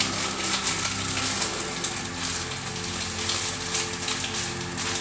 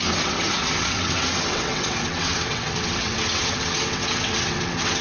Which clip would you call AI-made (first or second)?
second